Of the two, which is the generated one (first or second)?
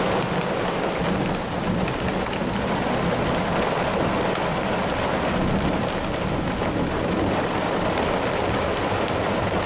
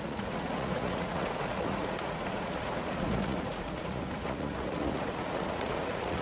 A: second